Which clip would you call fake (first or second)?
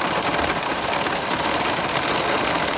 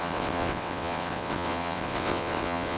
second